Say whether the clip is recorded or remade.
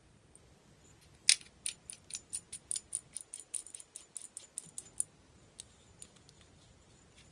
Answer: recorded